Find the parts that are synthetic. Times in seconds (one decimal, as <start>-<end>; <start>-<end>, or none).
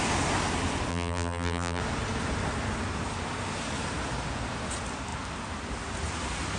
0.9-1.8